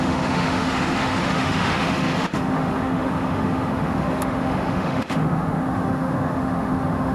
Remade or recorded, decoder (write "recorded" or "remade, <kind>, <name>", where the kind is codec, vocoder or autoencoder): remade, autoencoder, DAC-VAE